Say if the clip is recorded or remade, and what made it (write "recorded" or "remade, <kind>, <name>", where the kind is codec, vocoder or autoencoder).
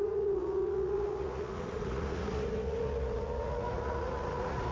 remade, vocoder, Vocos